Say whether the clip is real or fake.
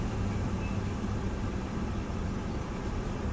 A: real